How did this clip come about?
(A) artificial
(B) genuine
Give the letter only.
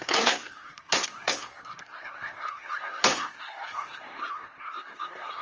A